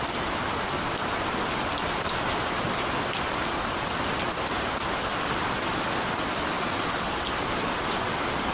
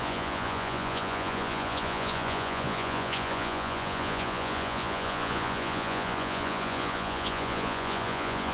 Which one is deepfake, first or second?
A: second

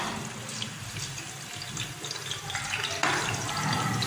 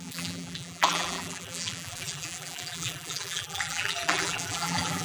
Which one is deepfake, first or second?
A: second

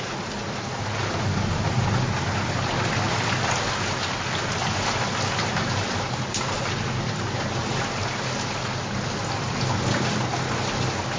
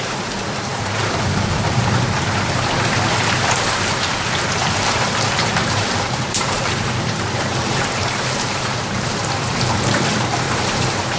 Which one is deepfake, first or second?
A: second